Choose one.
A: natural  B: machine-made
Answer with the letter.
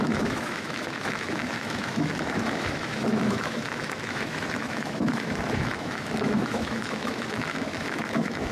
B